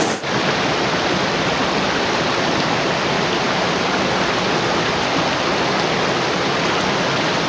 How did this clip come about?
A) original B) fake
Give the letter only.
A